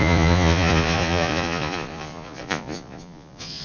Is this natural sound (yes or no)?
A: no